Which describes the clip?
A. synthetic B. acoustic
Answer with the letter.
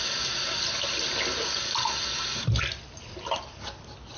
B